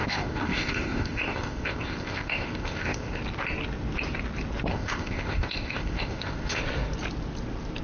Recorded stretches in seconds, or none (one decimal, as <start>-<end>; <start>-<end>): 3.2-4.7; 6.6-7.8